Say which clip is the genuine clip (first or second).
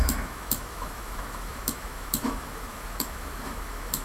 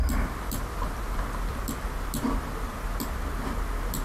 second